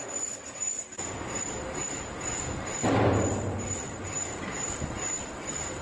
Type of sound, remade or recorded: recorded